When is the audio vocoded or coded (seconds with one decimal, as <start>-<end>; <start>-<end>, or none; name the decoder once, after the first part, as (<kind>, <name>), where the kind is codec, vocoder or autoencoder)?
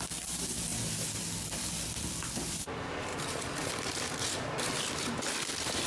none